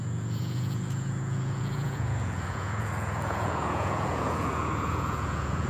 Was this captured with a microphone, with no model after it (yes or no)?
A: no